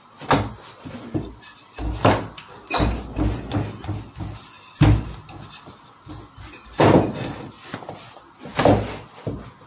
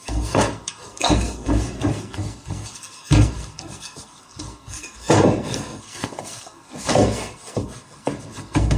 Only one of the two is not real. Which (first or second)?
second